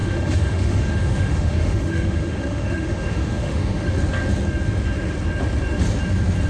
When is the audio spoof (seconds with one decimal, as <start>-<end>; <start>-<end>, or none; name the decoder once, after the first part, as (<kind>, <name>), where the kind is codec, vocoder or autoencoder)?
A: 0.0-3.9 (autoencoder, DAC-VAE)